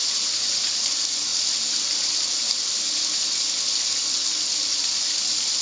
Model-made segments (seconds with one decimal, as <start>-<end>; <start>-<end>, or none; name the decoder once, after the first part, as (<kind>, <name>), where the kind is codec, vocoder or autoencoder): 0.0-1.3 (vocoder, BigVGAN v2); 4.7-5.6